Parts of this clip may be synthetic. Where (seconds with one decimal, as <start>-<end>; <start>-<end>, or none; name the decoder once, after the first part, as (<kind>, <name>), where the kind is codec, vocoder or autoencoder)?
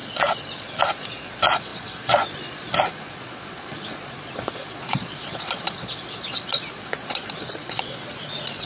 0.0-8.7 (vocoder, Vocos)